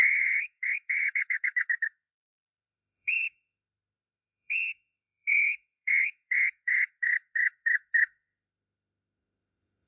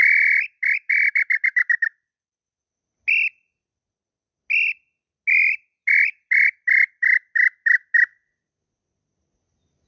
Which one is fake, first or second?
first